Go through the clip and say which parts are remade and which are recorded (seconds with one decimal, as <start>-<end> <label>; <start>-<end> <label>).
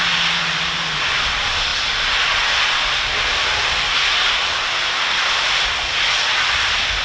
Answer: 0.0-7.0 recorded